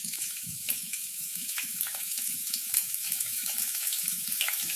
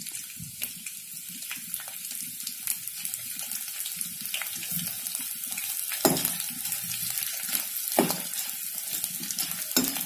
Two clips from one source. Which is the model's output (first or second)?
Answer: first